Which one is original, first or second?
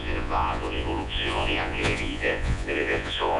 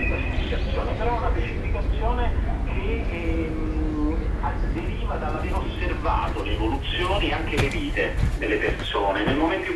second